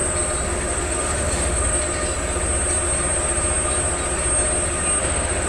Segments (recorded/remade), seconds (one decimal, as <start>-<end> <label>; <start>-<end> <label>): 0.0-0.5 recorded; 0.5-1.7 remade; 1.7-5.0 recorded; 5.0-5.5 remade

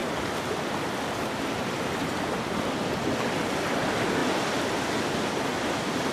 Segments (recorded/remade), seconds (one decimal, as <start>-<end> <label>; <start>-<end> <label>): 0.0-6.1 recorded

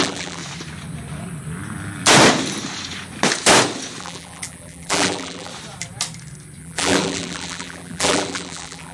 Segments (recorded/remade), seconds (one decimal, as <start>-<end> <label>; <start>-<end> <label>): 0.0-0.4 remade; 0.4-4.0 recorded; 4.0-5.5 remade; 5.5-6.6 recorded; 6.6-8.9 remade

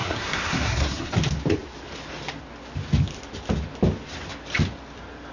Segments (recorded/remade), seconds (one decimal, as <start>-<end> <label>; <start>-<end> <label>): 0.0-1.1 remade; 1.1-5.3 recorded